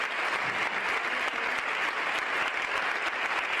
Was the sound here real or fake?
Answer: real